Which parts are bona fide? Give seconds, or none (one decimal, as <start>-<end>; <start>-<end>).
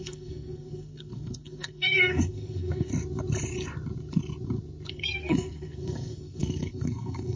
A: 2.9-4.9